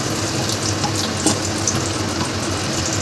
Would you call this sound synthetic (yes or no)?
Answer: no